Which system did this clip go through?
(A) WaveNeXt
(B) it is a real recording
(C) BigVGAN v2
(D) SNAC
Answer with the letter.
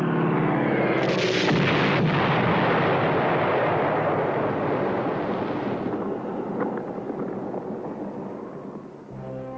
B